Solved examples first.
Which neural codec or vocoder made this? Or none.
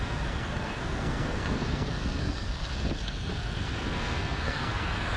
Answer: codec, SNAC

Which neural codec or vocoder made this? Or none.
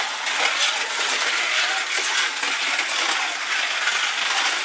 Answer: none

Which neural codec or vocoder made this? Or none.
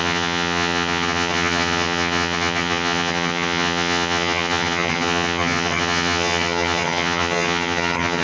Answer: vocoder, HiFi-GAN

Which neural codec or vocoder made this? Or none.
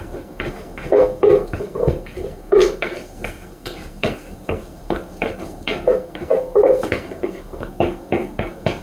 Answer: codec, SNAC